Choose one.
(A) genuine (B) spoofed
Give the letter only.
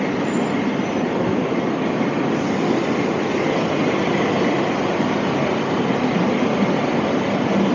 A